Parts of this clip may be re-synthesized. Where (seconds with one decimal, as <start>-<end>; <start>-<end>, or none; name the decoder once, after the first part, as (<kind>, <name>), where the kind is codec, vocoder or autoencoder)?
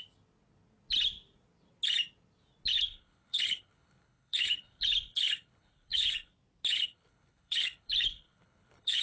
2.7-6.3 (codec, HILCodec); 6.7-9.0